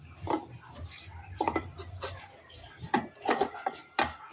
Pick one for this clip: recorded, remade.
recorded